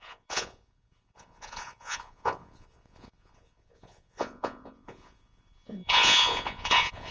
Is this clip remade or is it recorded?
remade